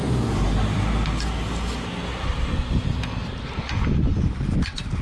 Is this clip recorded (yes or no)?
yes